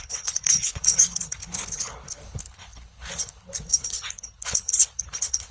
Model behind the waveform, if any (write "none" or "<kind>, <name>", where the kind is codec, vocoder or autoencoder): codec, HILCodec